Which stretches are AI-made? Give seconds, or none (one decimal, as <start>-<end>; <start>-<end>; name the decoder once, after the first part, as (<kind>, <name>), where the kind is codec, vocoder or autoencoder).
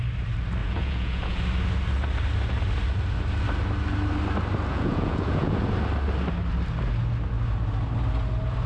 0.6-1.4 (vocoder, Vocos); 4.7-5.6